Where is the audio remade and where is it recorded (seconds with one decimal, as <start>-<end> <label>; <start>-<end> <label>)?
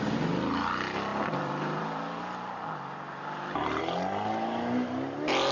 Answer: 0.0-1.1 recorded; 1.1-3.8 remade; 3.8-5.5 recorded